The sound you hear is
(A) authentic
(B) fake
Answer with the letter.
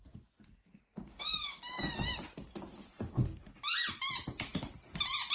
A